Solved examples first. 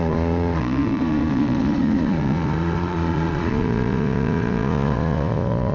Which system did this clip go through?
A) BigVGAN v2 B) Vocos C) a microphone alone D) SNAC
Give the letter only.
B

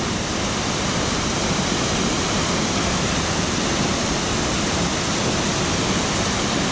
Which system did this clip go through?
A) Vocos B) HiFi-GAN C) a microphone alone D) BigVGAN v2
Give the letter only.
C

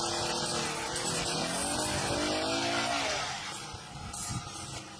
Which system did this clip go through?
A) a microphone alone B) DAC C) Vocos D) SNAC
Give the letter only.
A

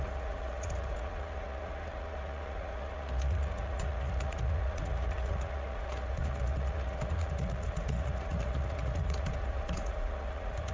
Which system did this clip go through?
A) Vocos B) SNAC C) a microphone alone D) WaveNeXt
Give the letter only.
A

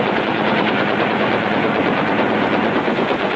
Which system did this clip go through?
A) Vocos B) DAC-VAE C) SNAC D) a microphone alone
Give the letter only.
A